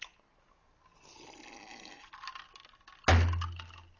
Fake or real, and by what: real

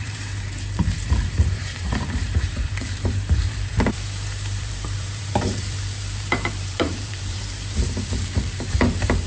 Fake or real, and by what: fake, vocoder, BigVGAN v2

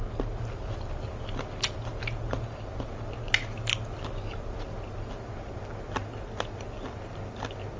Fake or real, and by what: real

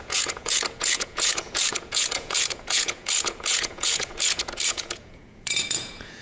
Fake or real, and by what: fake, vocoder, Vocos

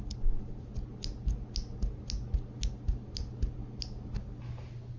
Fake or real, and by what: real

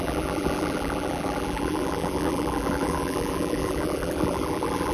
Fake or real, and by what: fake, vocoder, BigVGAN v2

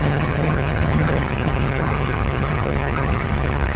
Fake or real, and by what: fake, vocoder, HiFi-GAN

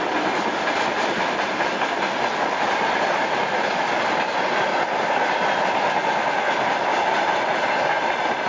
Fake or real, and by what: real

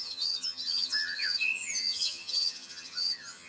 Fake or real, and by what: fake, vocoder, HiFi-GAN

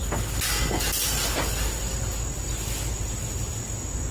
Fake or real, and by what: real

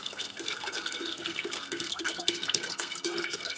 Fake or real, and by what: fake, codec, SNAC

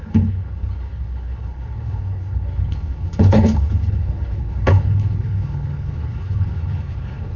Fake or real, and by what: fake, codec, HILCodec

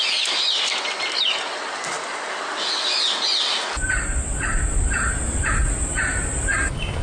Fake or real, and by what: real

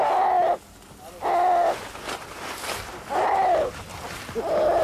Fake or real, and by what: real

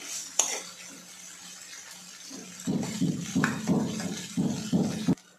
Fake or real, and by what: real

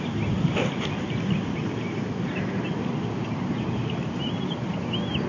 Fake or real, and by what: real